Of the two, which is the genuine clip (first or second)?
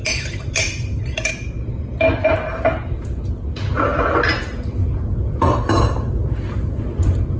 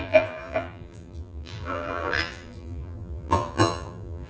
first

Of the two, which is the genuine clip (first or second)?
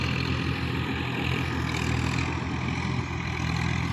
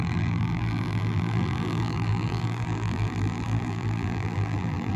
first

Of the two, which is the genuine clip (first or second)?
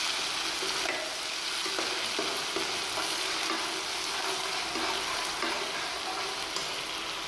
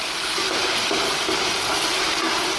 first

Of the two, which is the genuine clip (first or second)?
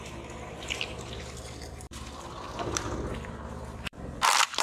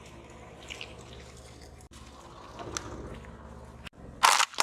second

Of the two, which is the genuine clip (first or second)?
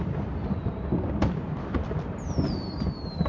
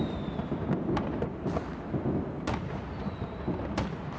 second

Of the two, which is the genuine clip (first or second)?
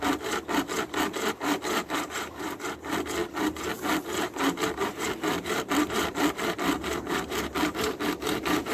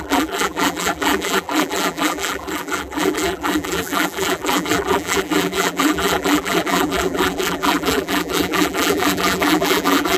first